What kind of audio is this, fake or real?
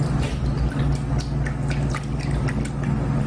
real